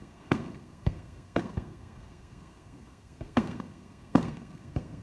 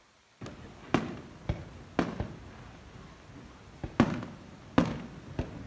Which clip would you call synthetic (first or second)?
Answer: first